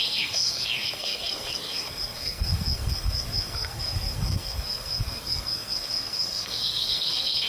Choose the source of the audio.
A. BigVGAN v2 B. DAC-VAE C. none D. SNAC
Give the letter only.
D